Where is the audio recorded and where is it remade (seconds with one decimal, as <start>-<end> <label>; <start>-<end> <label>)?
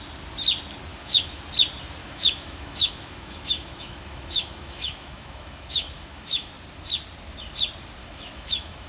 0.0-0.9 recorded; 0.9-1.4 remade; 1.4-2.0 recorded; 2.0-6.5 remade; 6.5-8.0 recorded; 8.0-8.9 remade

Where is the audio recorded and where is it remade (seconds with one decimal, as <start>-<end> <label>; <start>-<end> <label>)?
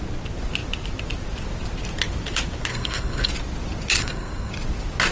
0.0-2.7 recorded; 2.7-3.3 remade; 3.3-4.0 recorded; 4.0-4.5 remade; 4.5-5.1 recorded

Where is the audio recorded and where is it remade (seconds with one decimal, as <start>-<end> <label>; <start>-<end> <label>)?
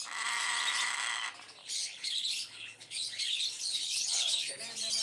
0.0-1.6 recorded; 1.6-4.6 remade; 4.6-5.0 recorded